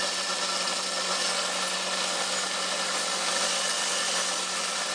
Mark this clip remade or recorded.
recorded